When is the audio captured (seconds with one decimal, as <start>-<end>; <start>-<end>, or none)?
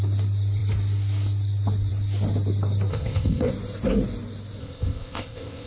0.0-2.9; 3.5-4.6